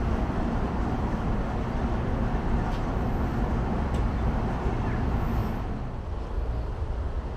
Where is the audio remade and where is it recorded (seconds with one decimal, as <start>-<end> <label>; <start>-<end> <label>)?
0.0-7.4 recorded